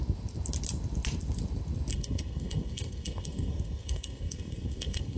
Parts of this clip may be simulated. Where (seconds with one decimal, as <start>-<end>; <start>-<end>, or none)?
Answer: 1.9-5.2